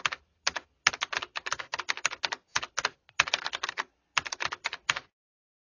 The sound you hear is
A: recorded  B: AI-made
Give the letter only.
A